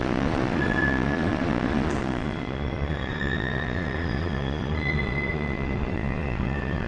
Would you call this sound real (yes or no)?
no